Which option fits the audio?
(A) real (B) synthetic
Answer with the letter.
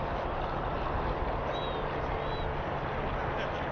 A